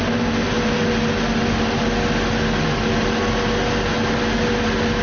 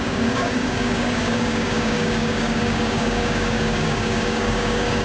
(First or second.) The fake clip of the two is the second